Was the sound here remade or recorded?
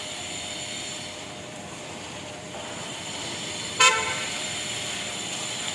remade